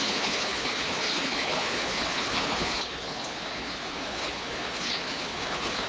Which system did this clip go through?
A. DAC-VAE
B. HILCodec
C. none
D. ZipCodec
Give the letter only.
B